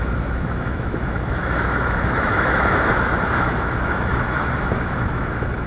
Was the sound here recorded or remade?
remade